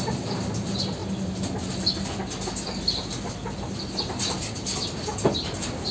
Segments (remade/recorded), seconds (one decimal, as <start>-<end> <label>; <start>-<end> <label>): 0.0-5.9 recorded